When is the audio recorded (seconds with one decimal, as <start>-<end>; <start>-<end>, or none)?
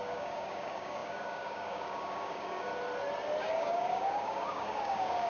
2.7-3.4